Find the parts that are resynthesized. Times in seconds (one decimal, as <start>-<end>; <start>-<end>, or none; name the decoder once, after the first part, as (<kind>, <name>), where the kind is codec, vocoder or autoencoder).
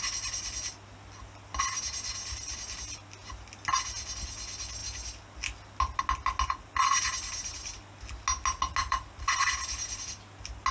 7.4-8.0 (vocoder, BigVGAN v2); 8.8-9.4